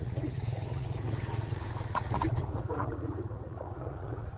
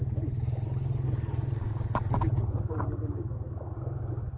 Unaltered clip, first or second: second